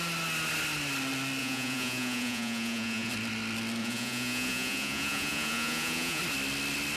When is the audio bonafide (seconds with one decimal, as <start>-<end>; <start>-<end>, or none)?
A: 0.0-1.4; 3.1-3.8; 6.2-7.0